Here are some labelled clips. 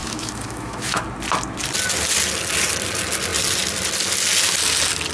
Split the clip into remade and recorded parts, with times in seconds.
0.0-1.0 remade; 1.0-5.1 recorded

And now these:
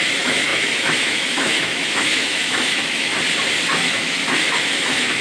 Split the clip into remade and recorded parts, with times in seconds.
0.0-3.1 remade; 3.1-3.7 recorded; 3.7-5.2 remade

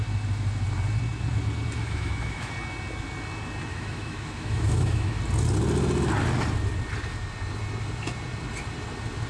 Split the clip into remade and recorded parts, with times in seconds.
0.0-1.8 recorded; 1.8-2.5 remade; 2.5-3.7 recorded; 3.7-5.2 remade; 5.2-9.3 recorded